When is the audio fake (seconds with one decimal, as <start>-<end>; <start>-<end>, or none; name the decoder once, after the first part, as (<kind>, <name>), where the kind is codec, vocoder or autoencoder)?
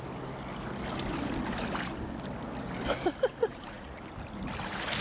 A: 3.3-4.0 (vocoder, Vocos)